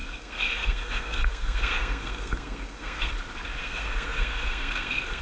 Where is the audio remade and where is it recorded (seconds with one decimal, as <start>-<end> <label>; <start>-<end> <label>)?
0.0-3.1 remade; 3.1-3.6 recorded; 3.6-5.2 remade